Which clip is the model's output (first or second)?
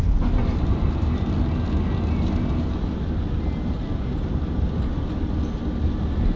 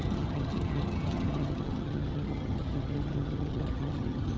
second